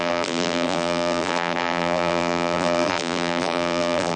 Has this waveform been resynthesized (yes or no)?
yes